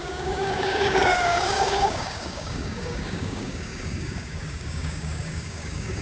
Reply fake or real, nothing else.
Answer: fake